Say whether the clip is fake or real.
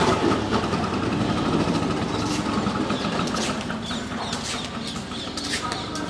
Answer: real